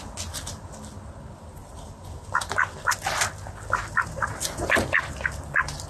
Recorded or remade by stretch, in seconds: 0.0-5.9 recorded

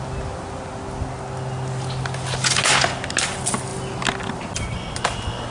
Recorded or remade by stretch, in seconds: 0.0-5.5 recorded